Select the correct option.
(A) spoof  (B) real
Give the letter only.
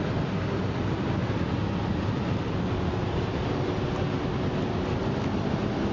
B